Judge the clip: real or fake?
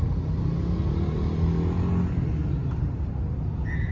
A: real